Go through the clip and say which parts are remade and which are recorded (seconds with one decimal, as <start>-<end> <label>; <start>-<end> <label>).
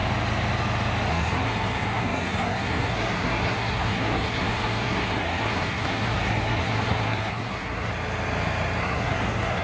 0.0-1.1 recorded; 1.1-7.9 remade; 7.9-8.8 recorded; 8.8-9.6 remade